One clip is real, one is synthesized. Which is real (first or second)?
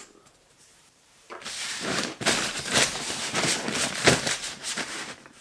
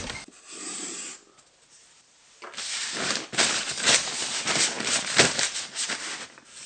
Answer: second